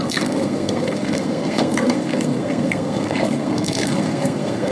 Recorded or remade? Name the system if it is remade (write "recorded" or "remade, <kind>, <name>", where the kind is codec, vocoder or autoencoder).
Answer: remade, codec, SNAC